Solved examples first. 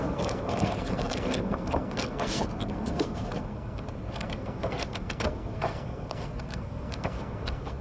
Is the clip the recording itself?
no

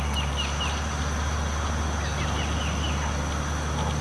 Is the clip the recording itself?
yes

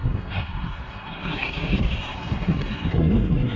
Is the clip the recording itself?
no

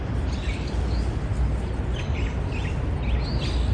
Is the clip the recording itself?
yes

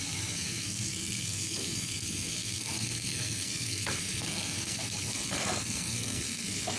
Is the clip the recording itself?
no